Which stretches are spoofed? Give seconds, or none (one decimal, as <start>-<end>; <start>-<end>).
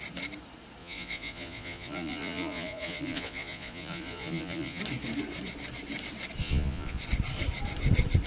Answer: 0.8-4.8; 6.4-7.0